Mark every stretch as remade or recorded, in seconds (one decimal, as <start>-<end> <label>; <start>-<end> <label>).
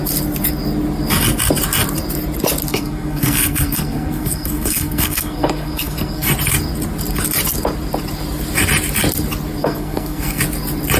0.0-2.7 recorded; 2.7-6.3 remade; 6.3-9.6 recorded; 9.6-10.4 remade; 10.4-11.0 recorded